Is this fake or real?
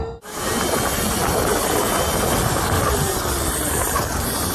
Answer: real